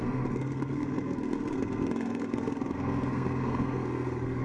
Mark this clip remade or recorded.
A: remade